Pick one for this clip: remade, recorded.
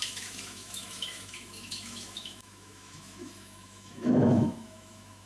remade